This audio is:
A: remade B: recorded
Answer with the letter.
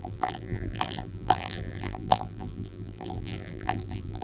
A